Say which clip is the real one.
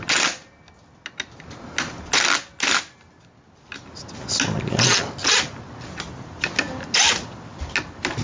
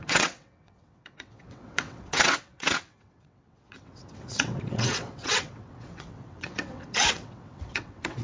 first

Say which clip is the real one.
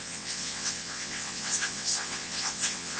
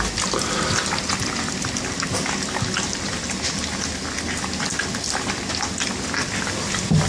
second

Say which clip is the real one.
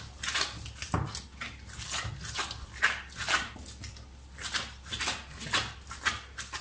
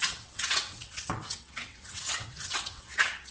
first